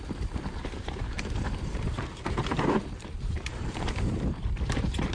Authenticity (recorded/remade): remade